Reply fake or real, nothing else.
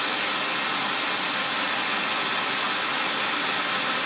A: real